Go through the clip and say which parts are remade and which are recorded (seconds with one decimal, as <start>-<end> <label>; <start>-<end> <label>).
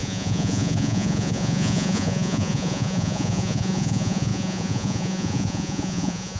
0.0-6.4 remade